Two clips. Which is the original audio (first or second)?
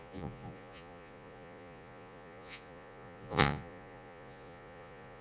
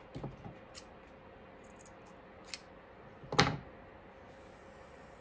second